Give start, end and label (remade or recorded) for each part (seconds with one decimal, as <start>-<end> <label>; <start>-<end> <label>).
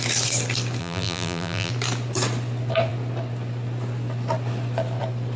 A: 0.0-0.8 recorded; 0.8-1.7 remade; 1.7-5.4 recorded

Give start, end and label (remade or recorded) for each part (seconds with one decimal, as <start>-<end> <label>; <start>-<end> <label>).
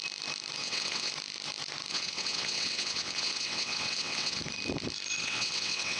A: 0.0-0.6 recorded; 0.6-1.1 remade; 1.1-1.9 recorded; 1.9-4.4 remade; 4.4-5.2 recorded; 5.2-6.0 remade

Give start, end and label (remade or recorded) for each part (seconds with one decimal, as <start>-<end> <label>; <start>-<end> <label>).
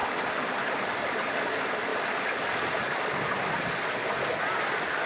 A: 0.0-5.1 recorded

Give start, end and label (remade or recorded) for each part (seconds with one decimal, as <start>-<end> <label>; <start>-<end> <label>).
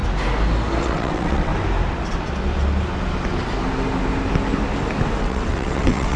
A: 0.0-0.8 recorded; 0.8-1.5 remade; 1.5-5.2 recorded; 5.2-6.2 remade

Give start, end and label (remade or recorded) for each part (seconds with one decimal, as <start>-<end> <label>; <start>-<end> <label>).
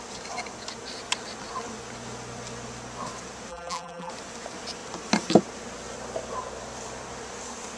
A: 0.0-3.5 recorded; 3.5-4.1 remade; 4.1-7.8 recorded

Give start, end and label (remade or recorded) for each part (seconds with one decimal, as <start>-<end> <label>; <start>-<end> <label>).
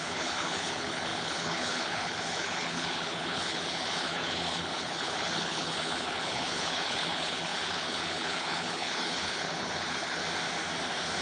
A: 0.0-10.2 remade; 10.2-11.2 recorded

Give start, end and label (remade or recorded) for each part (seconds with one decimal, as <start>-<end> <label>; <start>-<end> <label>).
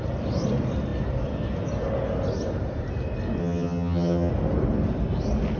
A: 0.0-3.4 recorded; 3.4-4.3 remade; 4.3-5.6 recorded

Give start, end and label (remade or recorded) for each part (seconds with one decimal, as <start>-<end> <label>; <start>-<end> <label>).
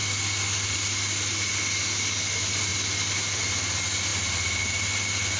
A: 0.0-5.4 recorded